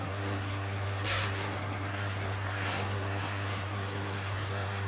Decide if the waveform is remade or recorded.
remade